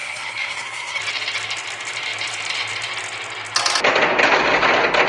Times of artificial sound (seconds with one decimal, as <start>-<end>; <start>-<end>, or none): 0.0-1.0